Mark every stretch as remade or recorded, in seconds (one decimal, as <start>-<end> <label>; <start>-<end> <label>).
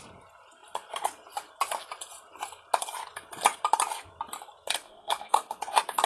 0.0-4.8 recorded; 4.8-5.6 remade; 5.6-6.1 recorded